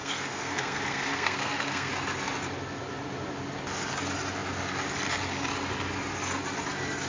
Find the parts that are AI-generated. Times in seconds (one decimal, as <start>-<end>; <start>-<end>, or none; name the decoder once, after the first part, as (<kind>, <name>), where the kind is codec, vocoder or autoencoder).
0.0-1.9 (codec, SNAC)